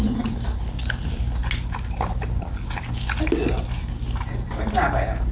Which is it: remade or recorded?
recorded